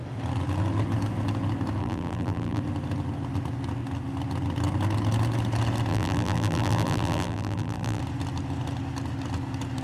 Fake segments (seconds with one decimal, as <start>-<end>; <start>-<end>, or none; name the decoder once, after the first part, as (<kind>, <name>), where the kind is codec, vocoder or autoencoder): 1.8-2.6 (vocoder, BigVGAN v2); 5.9-8.0